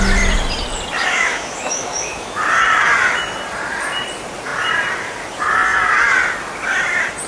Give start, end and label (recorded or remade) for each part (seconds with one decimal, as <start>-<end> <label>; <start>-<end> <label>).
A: 0.0-1.0 recorded; 1.0-2.4 remade; 2.4-7.3 recorded